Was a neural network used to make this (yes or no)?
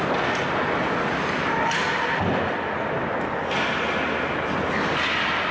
no